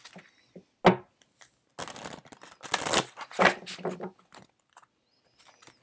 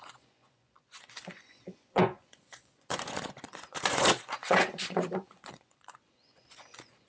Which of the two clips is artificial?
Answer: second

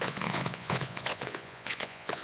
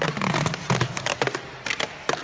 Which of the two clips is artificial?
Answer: first